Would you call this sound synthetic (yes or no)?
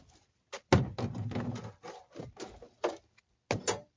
no